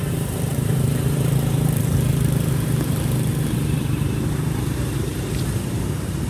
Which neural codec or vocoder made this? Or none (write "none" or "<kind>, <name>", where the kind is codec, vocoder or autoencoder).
vocoder, BigVGAN v2